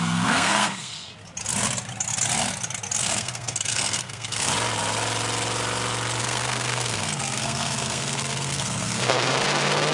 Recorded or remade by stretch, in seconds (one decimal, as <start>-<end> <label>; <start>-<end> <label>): 0.0-1.1 remade; 1.1-3.0 recorded; 3.0-4.5 remade; 4.5-6.2 recorded; 6.2-9.9 remade